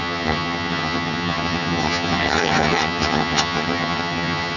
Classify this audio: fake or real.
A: fake